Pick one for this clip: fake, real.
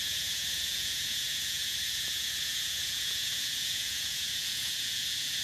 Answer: fake